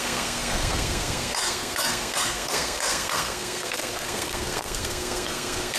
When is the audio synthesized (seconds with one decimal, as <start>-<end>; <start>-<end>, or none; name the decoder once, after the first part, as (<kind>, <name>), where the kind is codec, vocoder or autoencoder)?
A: 0.0-5.8 (codec, SNAC)